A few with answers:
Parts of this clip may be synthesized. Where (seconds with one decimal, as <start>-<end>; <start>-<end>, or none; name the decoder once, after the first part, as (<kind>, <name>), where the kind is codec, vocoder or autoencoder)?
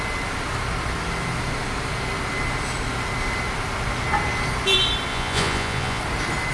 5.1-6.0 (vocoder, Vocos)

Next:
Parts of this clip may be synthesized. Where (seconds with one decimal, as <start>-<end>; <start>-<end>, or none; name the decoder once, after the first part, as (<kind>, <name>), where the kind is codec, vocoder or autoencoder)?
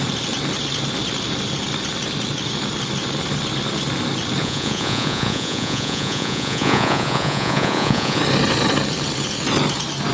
4.4-8.2 (vocoder, Vocos)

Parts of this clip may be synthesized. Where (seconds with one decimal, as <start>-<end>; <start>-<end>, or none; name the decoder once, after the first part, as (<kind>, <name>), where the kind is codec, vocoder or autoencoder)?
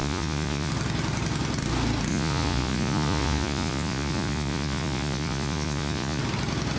0.0-0.7 (vocoder, Vocos); 2.1-6.2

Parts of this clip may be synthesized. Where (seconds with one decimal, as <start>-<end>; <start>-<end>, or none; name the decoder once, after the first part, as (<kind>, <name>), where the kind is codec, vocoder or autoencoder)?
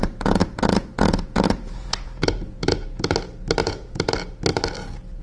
0.0-3.1 (vocoder, Vocos); 3.6-4.1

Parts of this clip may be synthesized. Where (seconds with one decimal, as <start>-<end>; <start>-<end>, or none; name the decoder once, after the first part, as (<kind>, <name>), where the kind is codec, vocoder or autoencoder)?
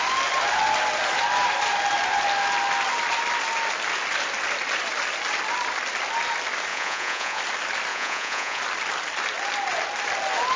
6.7-7.4 (vocoder, Vocos); 7.9-8.6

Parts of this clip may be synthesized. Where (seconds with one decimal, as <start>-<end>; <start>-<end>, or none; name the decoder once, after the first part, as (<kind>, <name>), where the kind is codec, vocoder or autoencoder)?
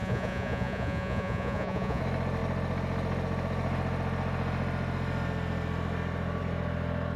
0.0-2.0 (vocoder, Vocos)